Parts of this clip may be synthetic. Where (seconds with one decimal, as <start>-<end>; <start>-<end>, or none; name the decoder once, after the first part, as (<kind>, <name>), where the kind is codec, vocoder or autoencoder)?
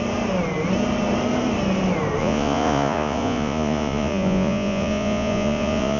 2.2-6.0 (vocoder, Vocos)